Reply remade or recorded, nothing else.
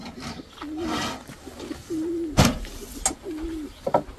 recorded